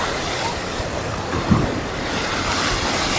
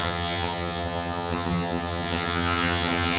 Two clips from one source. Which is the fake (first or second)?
second